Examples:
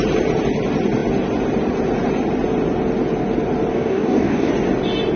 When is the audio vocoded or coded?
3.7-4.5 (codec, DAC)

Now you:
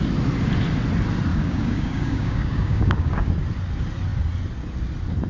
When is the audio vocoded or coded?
1.3-3.3 (codec, DAC)